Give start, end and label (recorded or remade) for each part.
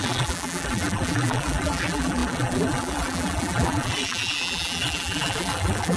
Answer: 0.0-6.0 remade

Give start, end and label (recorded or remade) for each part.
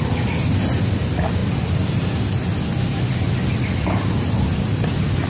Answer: 0.0-5.3 recorded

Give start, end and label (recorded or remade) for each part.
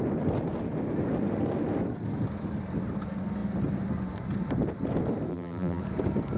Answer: 0.0-5.3 recorded; 5.3-5.8 remade; 5.8-6.4 recorded